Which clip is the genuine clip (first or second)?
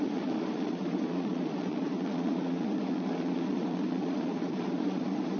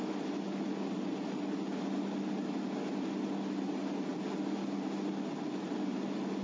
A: second